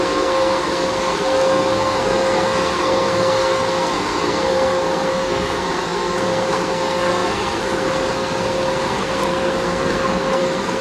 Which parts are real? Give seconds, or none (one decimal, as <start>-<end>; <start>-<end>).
none